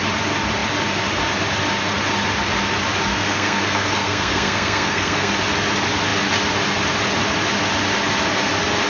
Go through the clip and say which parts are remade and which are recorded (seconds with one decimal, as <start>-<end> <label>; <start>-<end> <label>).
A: 0.0-3.1 recorded; 3.1-5.3 remade; 5.3-8.9 recorded